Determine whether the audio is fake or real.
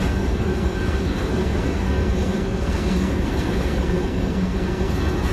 fake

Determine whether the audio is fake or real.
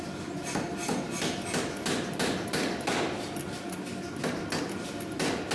real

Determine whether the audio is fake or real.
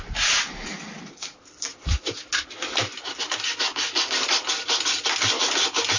real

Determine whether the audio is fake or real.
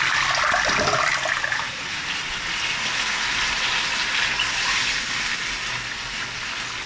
real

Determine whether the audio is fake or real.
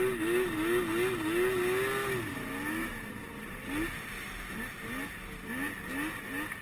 real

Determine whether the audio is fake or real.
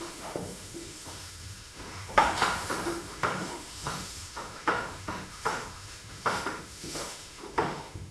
fake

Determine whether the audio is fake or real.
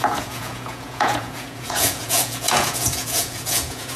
fake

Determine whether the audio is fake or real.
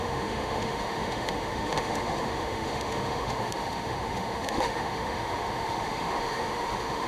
fake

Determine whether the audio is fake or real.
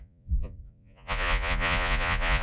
fake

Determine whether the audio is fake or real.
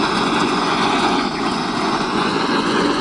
fake